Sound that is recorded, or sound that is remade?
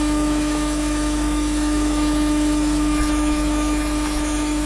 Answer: remade